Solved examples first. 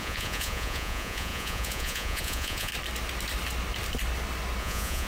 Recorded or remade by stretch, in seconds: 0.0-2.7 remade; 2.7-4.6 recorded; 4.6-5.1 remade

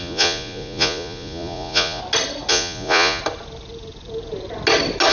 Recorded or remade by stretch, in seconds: 0.0-2.0 remade; 2.0-2.5 recorded; 2.5-3.2 remade; 3.2-5.1 recorded

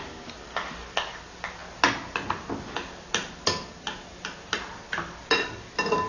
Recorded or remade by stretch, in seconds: 0.0-6.1 recorded

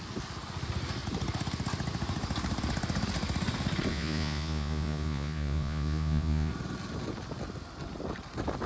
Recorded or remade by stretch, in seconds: 0.0-3.9 recorded; 3.9-6.5 remade; 6.5-8.7 recorded